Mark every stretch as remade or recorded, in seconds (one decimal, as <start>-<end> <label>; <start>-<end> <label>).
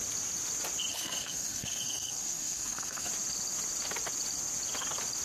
0.0-0.9 recorded; 0.9-3.1 remade; 3.1-5.2 recorded